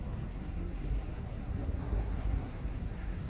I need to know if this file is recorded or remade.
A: remade